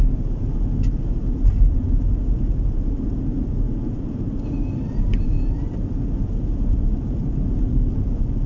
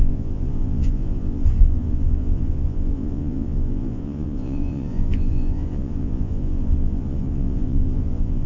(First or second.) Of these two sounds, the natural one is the first